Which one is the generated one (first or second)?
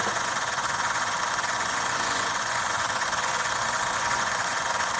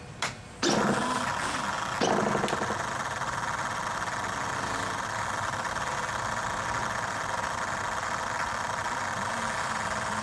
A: first